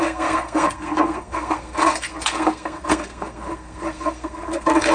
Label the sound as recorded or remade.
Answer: remade